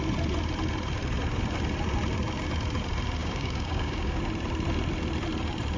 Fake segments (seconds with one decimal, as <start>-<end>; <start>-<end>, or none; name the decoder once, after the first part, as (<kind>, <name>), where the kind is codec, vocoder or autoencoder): 3.2-4.2 (codec, DAC)